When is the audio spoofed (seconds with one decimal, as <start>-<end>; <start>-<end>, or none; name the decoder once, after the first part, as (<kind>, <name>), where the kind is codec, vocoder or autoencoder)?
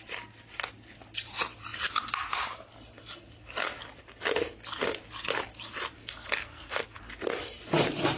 6.0-7.0 (codec, SNAC)